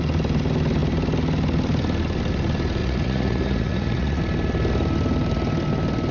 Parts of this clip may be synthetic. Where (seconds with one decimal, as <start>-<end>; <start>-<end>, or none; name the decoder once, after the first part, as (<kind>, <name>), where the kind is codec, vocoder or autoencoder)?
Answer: 2.8-4.2 (vocoder, Vocos)